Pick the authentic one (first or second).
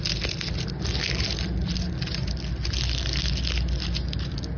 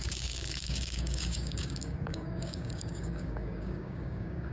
first